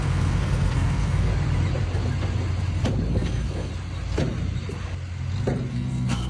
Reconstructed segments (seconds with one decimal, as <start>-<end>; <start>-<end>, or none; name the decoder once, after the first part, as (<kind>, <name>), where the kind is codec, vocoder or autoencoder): 0.0-1.3 (codec, SNAC); 3.1-3.7; 5.7-6.3